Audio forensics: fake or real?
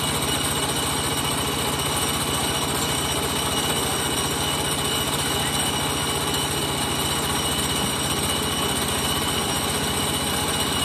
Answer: real